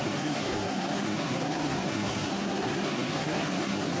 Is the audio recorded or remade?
remade